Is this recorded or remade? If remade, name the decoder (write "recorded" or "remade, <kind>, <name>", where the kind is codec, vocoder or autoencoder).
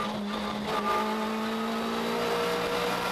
recorded